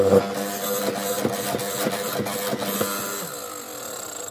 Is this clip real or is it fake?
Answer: real